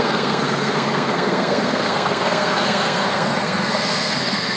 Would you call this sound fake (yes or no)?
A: yes